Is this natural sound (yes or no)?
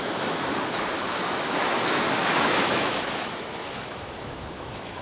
no